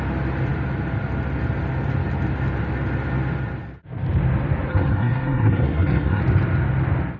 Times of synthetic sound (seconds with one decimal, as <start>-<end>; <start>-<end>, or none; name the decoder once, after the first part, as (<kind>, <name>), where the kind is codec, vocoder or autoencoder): 4.7-6.2 (codec, SNAC)